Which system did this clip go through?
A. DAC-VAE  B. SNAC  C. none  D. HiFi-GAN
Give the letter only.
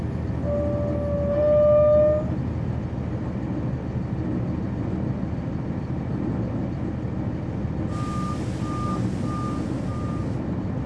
C